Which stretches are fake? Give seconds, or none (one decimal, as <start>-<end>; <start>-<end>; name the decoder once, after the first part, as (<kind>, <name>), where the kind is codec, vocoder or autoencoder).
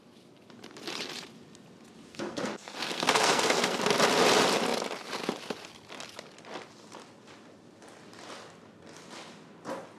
2.1-3.8 (codec, SNAC)